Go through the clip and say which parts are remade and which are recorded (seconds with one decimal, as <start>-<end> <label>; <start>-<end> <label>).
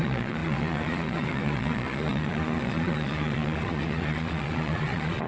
0.0-5.3 remade